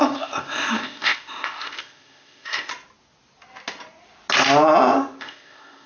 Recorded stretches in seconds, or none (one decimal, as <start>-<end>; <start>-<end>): 2.7-5.2

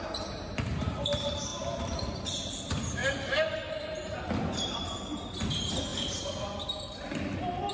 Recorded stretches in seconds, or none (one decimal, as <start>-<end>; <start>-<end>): 3.0-4.5; 5.9-7.7